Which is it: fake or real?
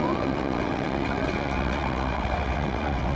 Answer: fake